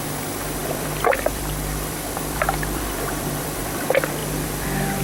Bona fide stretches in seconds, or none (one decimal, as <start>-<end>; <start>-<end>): 0.0-0.6; 3.6-5.0